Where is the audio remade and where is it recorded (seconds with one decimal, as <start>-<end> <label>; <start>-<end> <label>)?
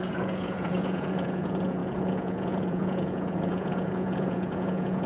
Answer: 0.0-5.1 remade